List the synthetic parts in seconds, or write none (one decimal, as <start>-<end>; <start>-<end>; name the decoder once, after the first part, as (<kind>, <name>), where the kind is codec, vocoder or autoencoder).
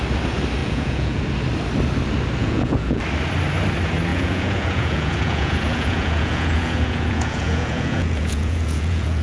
0.6-1.2 (vocoder, Vocos); 2.4-3.0; 4.1-9.2